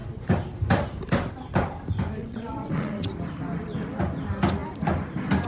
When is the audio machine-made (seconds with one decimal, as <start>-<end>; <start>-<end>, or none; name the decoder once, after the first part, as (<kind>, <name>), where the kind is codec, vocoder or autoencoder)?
2.2-3.1 (vocoder, WaveNeXt)